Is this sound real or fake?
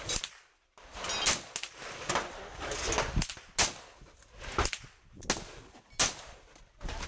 real